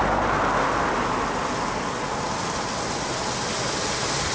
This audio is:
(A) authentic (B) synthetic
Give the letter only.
A